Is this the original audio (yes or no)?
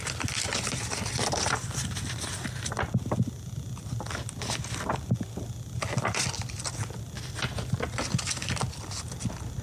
yes